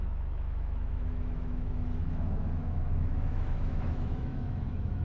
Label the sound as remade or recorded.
remade